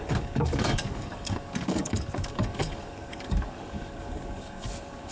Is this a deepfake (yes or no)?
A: yes